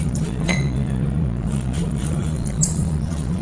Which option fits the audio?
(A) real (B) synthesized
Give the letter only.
B